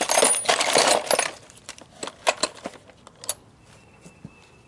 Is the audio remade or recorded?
recorded